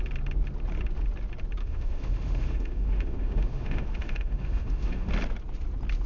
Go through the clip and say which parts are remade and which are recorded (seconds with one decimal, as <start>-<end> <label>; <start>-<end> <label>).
0.0-1.6 recorded; 1.6-5.1 remade; 5.1-6.1 recorded

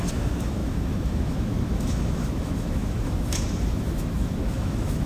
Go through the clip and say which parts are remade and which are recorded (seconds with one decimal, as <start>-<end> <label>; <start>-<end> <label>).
0.0-5.1 remade

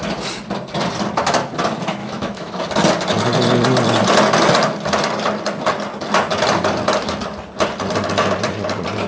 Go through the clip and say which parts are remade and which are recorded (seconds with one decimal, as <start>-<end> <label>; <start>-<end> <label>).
0.0-2.0 recorded; 2.0-2.6 remade; 2.6-9.1 recorded

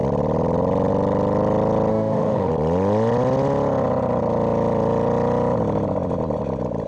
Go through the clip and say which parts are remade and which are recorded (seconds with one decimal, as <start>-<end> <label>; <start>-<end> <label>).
0.0-1.9 recorded; 1.9-2.5 remade; 2.5-6.9 recorded

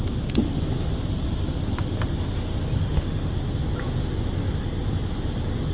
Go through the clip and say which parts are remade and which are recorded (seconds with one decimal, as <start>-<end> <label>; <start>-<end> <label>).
0.0-2.8 recorded; 2.8-3.3 remade; 3.3-5.7 recorded